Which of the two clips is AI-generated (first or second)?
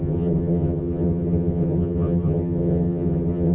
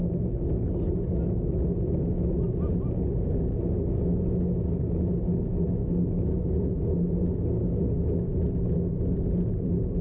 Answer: first